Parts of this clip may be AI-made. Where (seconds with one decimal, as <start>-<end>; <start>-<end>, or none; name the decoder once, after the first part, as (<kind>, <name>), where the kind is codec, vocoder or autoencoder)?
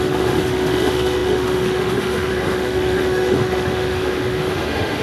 0.0-5.0 (autoencoder, DAC-VAE)